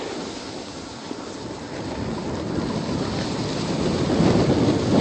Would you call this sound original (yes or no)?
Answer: yes